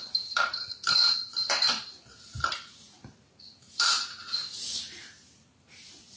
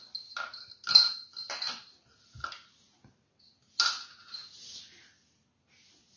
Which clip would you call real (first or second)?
second